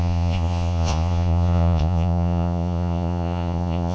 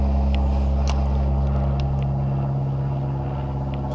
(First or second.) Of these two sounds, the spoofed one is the first